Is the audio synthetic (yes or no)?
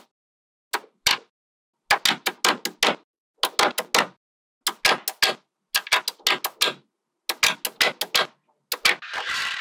no